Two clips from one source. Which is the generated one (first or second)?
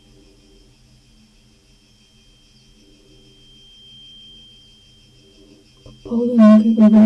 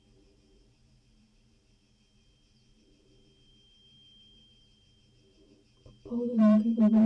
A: second